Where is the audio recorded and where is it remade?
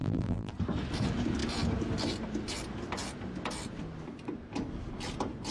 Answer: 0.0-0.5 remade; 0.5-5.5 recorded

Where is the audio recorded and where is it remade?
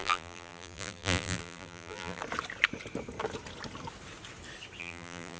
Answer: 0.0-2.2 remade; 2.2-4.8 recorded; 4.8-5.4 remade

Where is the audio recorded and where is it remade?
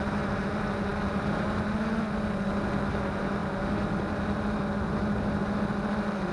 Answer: 0.0-6.3 recorded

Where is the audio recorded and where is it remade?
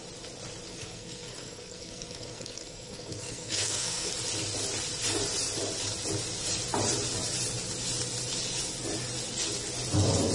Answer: 0.0-0.7 recorded; 0.7-4.1 remade; 4.1-10.3 recorded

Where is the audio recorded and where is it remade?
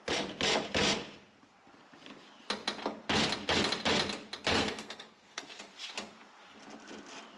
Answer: 0.0-4.5 recorded; 4.5-5.6 remade; 5.6-7.4 recorded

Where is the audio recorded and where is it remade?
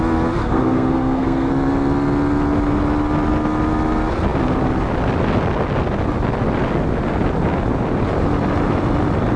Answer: 0.0-0.4 recorded; 0.4-1.5 remade; 1.5-9.4 recorded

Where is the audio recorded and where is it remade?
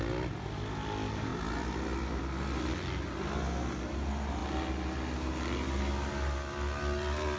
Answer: 0.0-7.4 recorded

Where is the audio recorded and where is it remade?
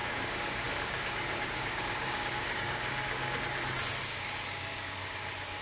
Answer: 0.0-3.4 remade; 3.4-4.1 recorded; 4.1-5.1 remade; 5.1-5.6 recorded